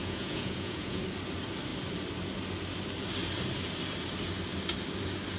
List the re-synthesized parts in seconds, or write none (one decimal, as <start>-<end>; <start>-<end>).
0.0-1.0